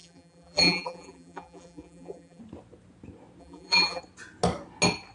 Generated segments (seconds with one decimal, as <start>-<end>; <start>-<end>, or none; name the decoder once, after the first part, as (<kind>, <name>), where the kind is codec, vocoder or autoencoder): 0.0-2.4 (vocoder, BigVGAN v2); 3.4-4.0